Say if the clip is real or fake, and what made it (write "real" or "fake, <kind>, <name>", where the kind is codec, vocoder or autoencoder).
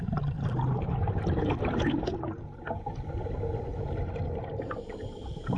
real